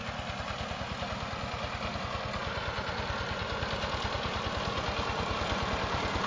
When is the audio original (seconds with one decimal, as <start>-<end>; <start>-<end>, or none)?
0.0-6.3